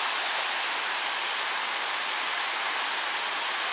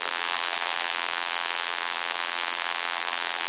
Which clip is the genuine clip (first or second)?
first